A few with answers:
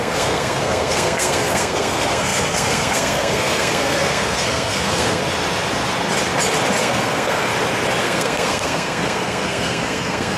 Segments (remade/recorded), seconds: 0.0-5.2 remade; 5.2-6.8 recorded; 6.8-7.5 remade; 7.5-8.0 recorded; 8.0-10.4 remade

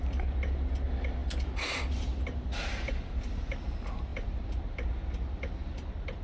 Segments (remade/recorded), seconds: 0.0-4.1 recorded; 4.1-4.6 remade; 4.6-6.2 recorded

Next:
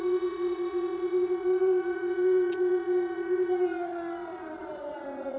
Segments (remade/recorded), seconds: 0.0-5.4 remade

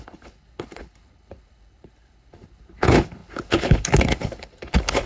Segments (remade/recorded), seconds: 0.0-5.1 remade